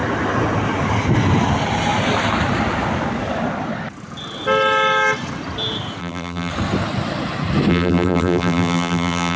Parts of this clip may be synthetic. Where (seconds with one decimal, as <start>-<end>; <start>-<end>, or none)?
6.0-6.5; 7.7-9.4